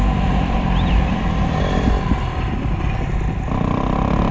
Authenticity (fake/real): real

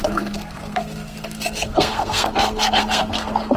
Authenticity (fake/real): fake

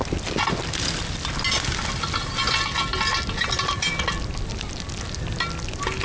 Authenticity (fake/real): real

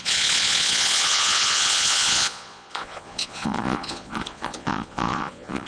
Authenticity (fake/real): fake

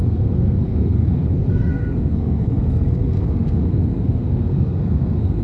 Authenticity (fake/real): fake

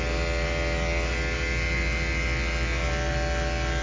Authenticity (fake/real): real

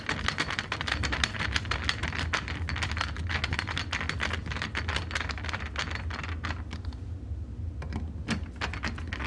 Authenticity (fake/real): real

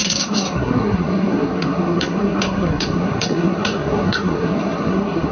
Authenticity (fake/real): fake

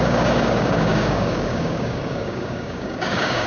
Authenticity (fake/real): fake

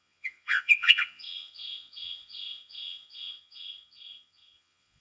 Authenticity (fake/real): fake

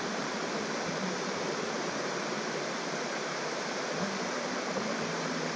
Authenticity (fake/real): fake